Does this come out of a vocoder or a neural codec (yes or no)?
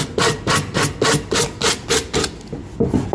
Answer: no